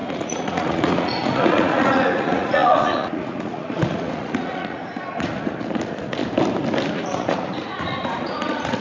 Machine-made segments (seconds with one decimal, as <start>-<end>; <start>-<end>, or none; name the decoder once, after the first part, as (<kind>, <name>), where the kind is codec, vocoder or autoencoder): 0.0-6.2 (vocoder, Vocos); 6.9-8.8